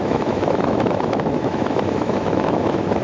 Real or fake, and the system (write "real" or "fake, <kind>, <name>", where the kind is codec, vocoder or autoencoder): fake, autoencoder, DAC-VAE